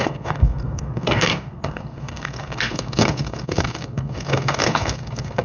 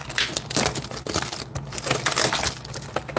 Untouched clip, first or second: second